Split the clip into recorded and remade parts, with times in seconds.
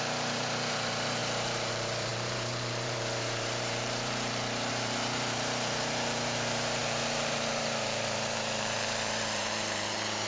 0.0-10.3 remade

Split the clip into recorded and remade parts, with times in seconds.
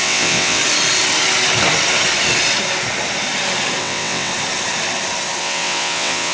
0.0-0.6 remade; 0.6-3.8 recorded; 3.8-4.3 remade; 4.3-5.4 recorded; 5.4-6.3 remade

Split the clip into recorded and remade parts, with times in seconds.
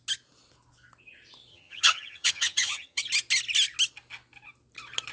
0.0-1.5 recorded; 1.5-3.0 remade; 3.0-5.1 recorded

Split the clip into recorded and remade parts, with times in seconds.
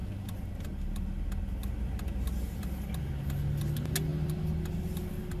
0.0-5.4 recorded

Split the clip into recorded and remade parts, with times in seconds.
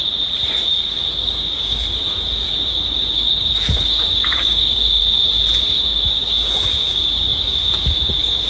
0.0-0.7 recorded; 0.7-5.0 remade; 5.0-5.6 recorded; 5.6-8.5 remade